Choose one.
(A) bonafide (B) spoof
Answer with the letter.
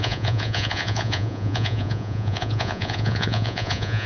B